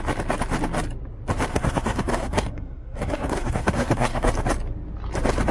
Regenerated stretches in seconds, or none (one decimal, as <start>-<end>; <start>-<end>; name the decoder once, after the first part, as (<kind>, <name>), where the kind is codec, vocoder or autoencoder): 1.5-4.3 (codec, SNAC)